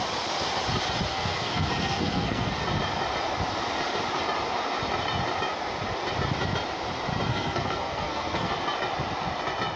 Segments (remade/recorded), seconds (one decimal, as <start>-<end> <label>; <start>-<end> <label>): 0.0-1.1 recorded; 1.1-2.5 remade; 2.5-7.3 recorded; 7.3-8.5 remade; 8.5-9.8 recorded

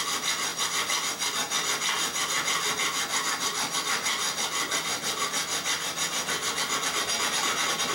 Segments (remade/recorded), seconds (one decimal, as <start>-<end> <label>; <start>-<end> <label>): 0.0-7.9 recorded

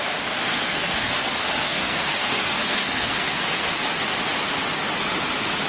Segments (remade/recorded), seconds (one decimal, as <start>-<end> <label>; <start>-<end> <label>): 0.0-0.4 recorded; 0.4-3.8 remade; 3.8-5.7 recorded

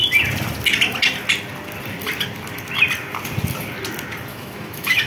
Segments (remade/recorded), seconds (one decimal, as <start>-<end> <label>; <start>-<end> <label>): 0.0-4.3 recorded; 4.3-5.1 remade

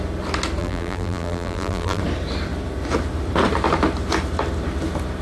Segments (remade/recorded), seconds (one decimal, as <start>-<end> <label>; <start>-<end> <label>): 0.0-0.6 recorded; 0.6-2.0 remade; 2.0-5.2 recorded

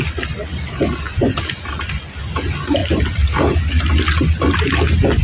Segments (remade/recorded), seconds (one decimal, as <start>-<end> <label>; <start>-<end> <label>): 0.0-5.2 recorded